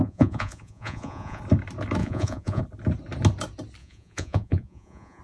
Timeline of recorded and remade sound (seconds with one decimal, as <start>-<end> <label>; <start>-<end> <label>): 0.0-1.4 remade; 1.4-2.0 recorded; 2.0-2.6 remade; 2.6-3.8 recorded; 3.8-5.2 remade